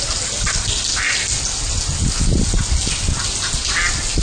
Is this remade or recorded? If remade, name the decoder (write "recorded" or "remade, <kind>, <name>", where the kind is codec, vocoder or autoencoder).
recorded